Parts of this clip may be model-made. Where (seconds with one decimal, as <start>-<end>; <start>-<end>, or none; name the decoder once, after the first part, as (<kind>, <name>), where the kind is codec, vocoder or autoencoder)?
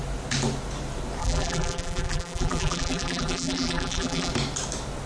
1.2-4.3 (vocoder, BigVGAN v2)